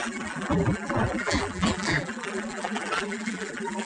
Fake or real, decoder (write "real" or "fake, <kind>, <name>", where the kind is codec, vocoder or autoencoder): fake, vocoder, BigVGAN v2